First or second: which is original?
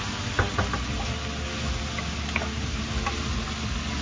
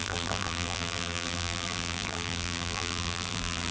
first